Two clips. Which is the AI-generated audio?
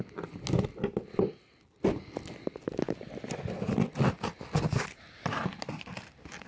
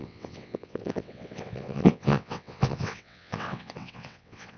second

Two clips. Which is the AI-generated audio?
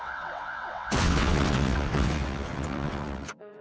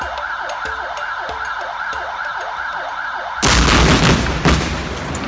first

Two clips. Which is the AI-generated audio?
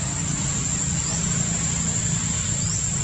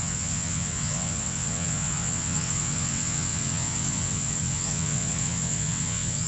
second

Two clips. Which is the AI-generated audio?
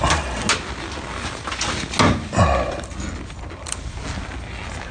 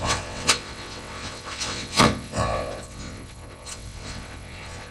second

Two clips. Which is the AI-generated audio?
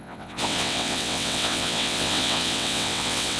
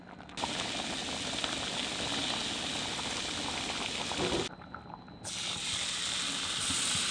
first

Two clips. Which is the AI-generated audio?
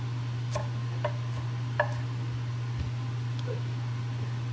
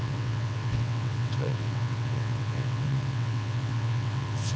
second